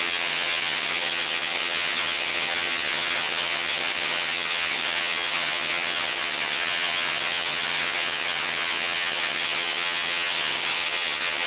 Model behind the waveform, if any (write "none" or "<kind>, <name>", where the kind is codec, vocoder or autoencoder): vocoder, HiFi-GAN